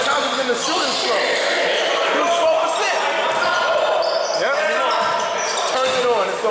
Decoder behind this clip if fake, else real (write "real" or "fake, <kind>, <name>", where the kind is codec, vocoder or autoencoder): real